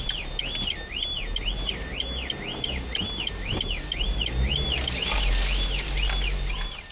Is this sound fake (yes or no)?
no